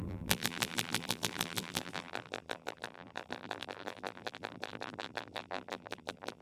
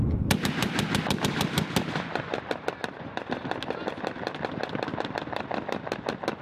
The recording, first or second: second